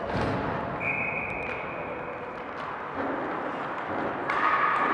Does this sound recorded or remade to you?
recorded